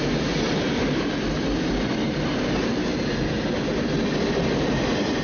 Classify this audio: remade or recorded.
recorded